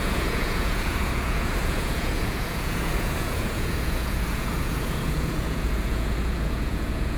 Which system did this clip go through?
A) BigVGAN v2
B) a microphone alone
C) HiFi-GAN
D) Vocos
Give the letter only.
D